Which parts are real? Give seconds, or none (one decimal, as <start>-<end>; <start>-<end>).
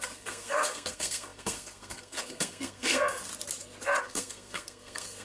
3.3-4.0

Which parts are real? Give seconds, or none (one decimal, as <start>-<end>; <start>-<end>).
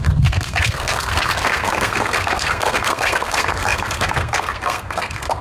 none